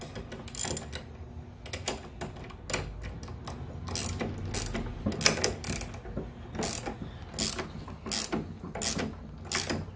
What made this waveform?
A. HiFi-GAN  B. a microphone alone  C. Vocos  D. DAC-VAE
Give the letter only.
B